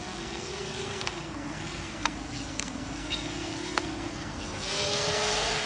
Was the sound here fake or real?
fake